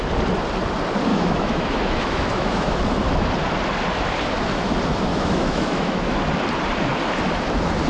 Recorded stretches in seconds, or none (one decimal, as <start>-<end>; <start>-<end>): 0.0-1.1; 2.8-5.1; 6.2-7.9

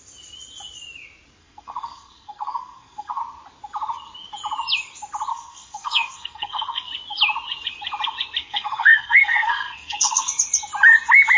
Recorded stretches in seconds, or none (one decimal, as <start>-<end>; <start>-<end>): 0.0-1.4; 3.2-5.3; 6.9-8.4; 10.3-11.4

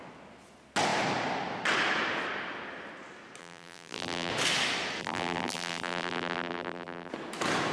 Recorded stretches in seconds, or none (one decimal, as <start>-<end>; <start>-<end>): 0.0-3.4; 4.3-5.0; 7.1-7.7

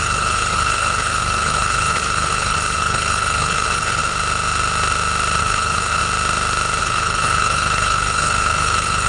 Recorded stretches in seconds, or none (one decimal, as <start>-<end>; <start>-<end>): 4.0-5.4; 6.0-6.8

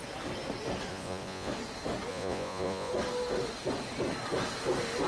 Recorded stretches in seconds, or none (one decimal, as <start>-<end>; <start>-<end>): 0.0-0.9; 1.5-2.1; 2.9-5.1